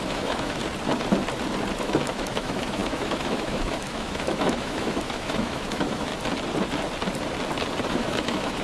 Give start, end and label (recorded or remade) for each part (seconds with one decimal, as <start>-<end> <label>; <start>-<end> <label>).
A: 0.0-0.6 remade; 0.6-1.8 recorded; 1.8-6.1 remade; 6.1-7.9 recorded; 7.9-8.6 remade